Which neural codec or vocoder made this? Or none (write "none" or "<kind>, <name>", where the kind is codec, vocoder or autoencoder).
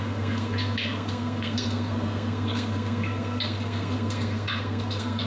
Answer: codec, SNAC